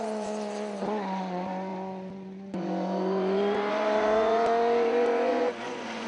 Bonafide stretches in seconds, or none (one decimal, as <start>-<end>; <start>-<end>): none